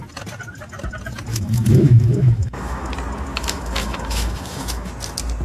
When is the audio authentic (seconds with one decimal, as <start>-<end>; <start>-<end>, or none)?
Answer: 0.0-1.3; 2.9-3.3; 4.9-5.4